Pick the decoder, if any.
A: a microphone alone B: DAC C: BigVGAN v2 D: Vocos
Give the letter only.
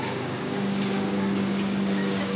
B